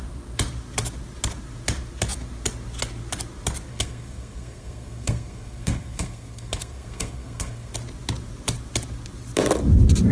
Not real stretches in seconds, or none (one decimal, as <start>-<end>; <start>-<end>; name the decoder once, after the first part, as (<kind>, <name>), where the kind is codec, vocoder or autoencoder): 3.7-7.7 (codec, SNAC)